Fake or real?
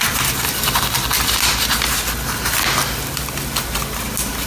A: real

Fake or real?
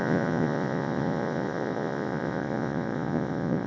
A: fake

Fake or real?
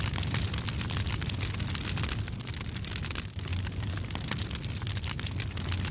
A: real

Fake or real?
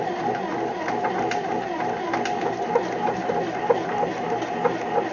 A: real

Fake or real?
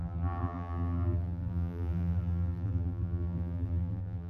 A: fake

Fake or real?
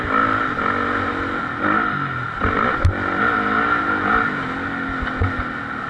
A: real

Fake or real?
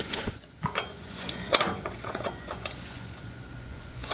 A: fake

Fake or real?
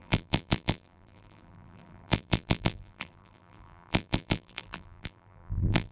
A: fake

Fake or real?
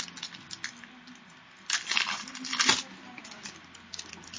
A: real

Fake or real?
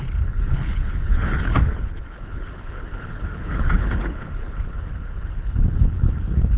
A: fake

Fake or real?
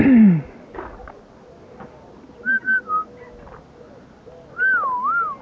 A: real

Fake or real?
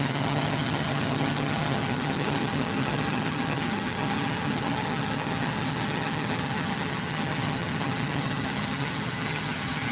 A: fake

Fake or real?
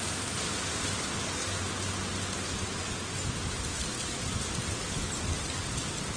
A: real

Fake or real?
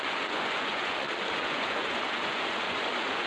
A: fake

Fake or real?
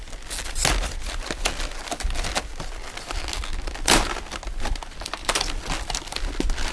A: real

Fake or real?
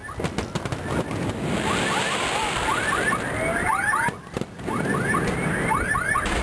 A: real